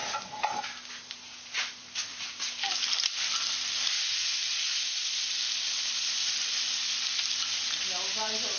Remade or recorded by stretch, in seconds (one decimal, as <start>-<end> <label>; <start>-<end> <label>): 0.0-8.6 recorded